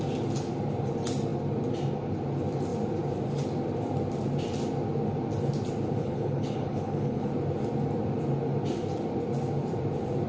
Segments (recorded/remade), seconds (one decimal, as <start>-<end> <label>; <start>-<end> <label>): 0.0-6.0 recorded; 6.0-7.3 remade; 7.3-10.3 recorded